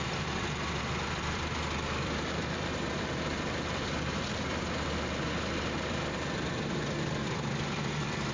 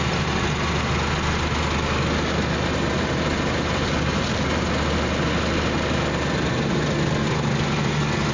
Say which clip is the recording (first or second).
second